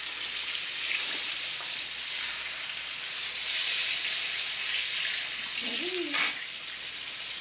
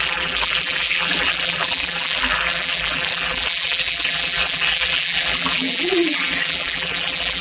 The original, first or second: first